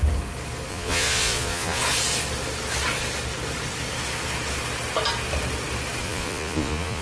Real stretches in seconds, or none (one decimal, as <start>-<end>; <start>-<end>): 0.0-0.7; 1.8-6.0